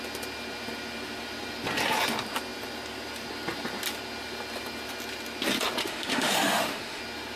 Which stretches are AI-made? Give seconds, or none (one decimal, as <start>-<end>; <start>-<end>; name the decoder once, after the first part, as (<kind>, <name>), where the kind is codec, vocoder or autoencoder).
5.8-7.0 (autoencoder, DAC-VAE)